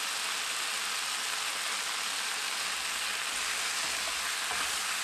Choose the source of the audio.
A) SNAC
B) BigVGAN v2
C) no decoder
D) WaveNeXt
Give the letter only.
C